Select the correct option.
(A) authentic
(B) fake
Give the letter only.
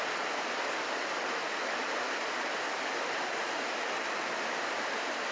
A